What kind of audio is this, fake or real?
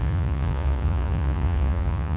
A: fake